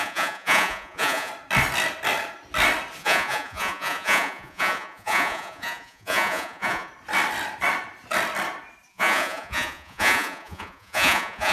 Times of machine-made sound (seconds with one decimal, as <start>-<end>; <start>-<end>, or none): 0.0-1.3; 3.0-6.9; 8.9-11.5